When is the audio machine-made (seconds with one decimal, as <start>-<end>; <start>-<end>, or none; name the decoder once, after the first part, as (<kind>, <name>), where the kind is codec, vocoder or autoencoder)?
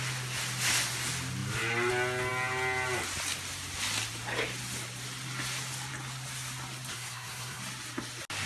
6.9-7.6 (codec, SNAC)